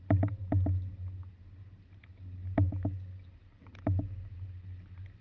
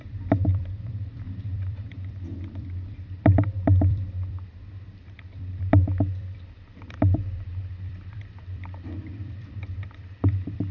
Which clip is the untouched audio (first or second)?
first